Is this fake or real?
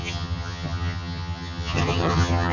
fake